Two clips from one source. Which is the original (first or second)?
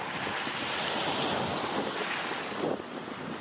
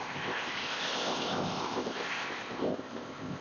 first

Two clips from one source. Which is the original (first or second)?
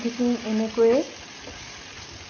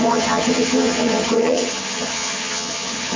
first